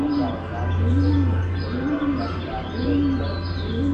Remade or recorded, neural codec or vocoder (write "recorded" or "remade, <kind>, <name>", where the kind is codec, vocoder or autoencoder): recorded